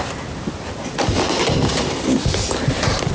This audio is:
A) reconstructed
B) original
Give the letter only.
B